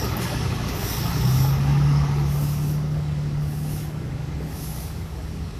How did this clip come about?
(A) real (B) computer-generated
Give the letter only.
B